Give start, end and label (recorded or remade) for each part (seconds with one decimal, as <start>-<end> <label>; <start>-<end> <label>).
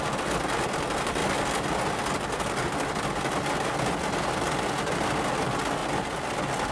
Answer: 0.0-6.7 recorded